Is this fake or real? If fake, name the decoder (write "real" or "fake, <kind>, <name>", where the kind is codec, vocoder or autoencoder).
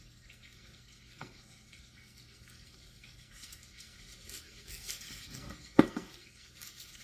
fake, codec, SNAC